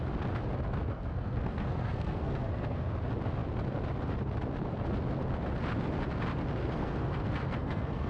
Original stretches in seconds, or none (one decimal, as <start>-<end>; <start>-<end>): 0.0-0.9; 2.9-6.6